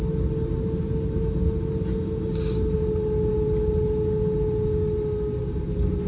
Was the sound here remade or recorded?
recorded